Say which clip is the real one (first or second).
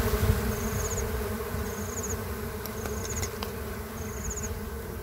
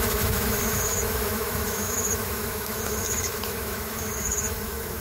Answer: first